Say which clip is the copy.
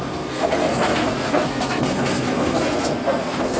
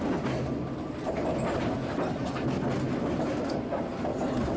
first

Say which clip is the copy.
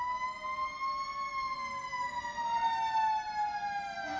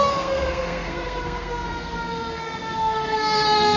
second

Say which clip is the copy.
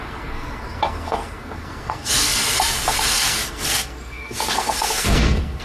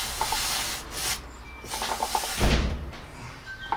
first